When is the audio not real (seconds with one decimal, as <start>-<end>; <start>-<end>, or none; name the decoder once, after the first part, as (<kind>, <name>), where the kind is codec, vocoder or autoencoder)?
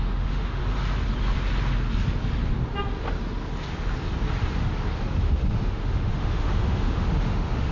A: 0.0-0.6 (autoencoder, DAC-VAE); 5.2-7.7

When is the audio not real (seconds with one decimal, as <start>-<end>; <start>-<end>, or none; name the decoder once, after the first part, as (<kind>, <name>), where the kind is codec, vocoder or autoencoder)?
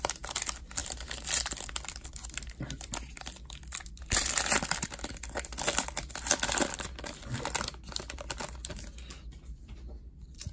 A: none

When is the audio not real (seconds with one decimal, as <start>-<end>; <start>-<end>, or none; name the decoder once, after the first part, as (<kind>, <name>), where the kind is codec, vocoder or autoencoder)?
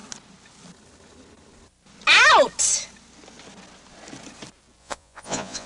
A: 4.8-5.7 (vocoder, Vocos)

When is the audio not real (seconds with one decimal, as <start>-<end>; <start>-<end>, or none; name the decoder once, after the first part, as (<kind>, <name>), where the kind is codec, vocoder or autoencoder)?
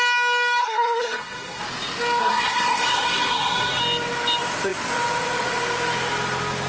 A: 0.6-1.6 (codec, SNAC); 2.2-3.8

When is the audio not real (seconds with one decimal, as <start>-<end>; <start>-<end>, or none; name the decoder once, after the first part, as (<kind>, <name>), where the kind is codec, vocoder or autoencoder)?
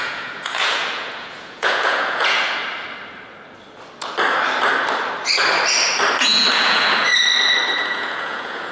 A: 0.0-2.6 (vocoder, Vocos); 6.2-7.1; 7.8-8.7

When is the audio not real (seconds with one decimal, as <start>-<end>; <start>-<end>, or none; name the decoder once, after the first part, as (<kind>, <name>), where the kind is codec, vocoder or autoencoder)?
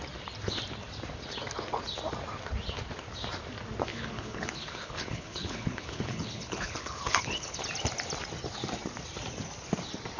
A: 3.9-7.6 (codec, HILCodec)